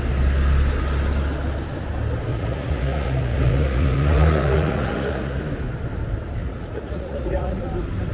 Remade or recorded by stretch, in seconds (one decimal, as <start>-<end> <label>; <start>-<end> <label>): 0.0-2.3 recorded; 2.3-5.4 remade; 5.4-6.4 recorded; 6.4-7.6 remade; 7.6-8.1 recorded

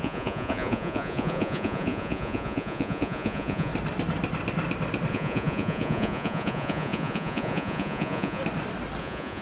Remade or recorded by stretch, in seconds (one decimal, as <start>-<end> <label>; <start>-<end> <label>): 0.0-3.7 remade; 3.7-5.1 recorded; 5.1-8.4 remade; 8.4-9.0 recorded; 9.0-9.4 remade

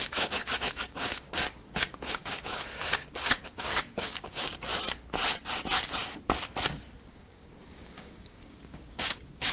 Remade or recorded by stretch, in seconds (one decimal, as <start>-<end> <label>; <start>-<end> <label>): 0.0-4.7 remade; 4.7-7.1 recorded; 7.1-9.5 remade

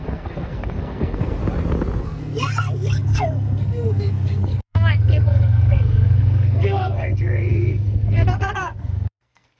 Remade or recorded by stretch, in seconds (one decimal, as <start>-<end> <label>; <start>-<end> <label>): 0.0-1.4 remade; 1.4-2.0 recorded; 2.0-9.6 remade

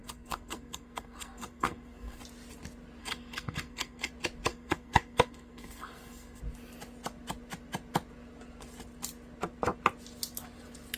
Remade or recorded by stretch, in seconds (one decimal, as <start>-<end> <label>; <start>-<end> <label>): 0.0-2.2 remade; 2.2-3.0 recorded; 3.0-4.1 remade; 4.1-4.5 recorded; 4.5-6.4 remade; 6.4-11.0 recorded

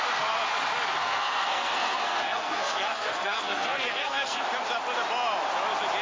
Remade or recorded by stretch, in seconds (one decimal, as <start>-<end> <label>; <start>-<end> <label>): 0.0-1.0 recorded; 1.0-4.4 remade; 4.4-6.0 recorded